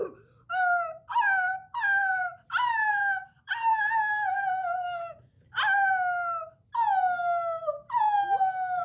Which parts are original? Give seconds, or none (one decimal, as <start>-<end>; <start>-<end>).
0.0-1.6; 3.7-8.8